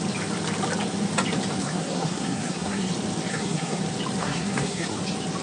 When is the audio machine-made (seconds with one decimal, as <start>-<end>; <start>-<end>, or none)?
1.6-2.9; 3.3-3.8; 4.2-5.0